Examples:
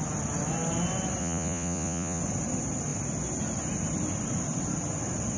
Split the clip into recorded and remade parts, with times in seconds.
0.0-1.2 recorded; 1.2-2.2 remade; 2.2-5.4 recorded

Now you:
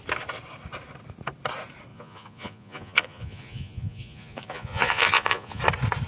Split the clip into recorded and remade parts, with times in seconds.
0.0-1.9 recorded; 1.9-5.6 remade; 5.6-6.1 recorded

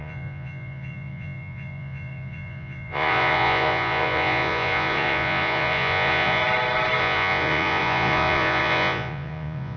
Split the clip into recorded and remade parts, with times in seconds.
0.0-6.4 remade; 6.4-7.0 recorded; 7.0-9.8 remade

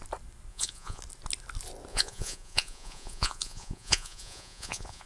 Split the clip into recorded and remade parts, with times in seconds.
0.0-0.5 recorded; 0.5-1.0 remade; 1.0-1.9 recorded; 1.9-5.1 remade

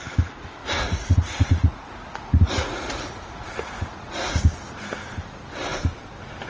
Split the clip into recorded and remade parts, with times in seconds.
0.0-0.6 recorded; 0.6-4.4 remade; 4.4-6.5 recorded

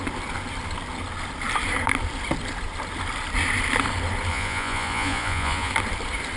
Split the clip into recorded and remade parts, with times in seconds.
0.0-4.3 recorded; 4.3-5.7 remade; 5.7-6.4 recorded

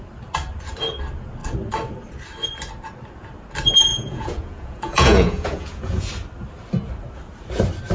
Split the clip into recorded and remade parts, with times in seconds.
0.0-3.9 recorded; 3.9-6.1 remade; 6.1-7.9 recorded